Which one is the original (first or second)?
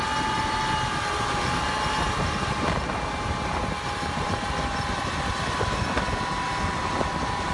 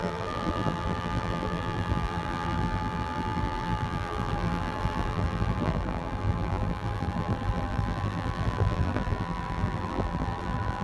first